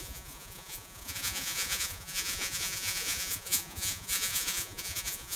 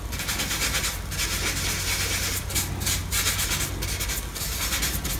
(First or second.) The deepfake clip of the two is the first